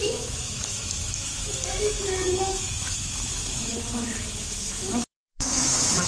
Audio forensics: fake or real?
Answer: fake